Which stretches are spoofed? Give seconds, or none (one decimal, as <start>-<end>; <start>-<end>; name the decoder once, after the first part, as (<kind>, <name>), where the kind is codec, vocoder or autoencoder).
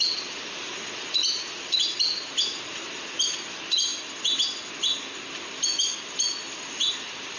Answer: none